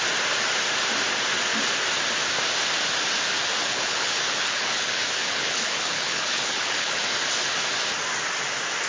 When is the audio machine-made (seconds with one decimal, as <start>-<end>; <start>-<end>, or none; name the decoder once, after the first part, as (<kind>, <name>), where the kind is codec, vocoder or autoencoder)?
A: 3.6-7.0 (codec, HILCodec)